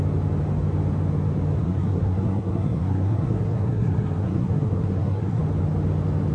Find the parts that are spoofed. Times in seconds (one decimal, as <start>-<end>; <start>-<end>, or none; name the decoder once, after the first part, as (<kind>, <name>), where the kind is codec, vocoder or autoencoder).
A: 1.6-5.4 (codec, SNAC)